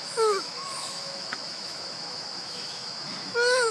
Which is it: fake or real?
fake